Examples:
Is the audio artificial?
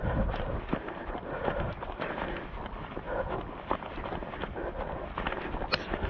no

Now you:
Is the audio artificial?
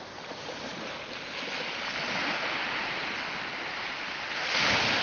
no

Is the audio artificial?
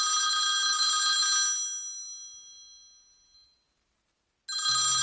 no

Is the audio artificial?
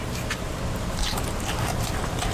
yes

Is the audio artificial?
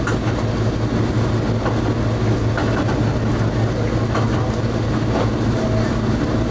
no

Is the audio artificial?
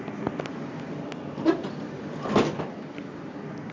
no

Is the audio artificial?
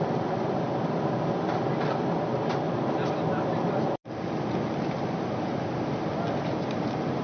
no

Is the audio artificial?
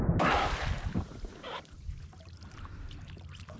no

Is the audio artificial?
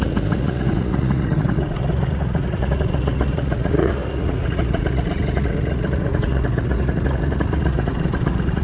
yes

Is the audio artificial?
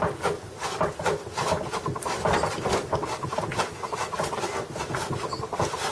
no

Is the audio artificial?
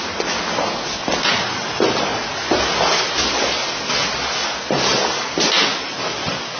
no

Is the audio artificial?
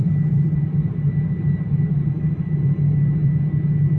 no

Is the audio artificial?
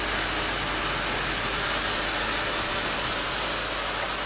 no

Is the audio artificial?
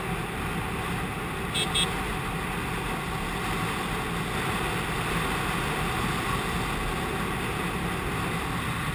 no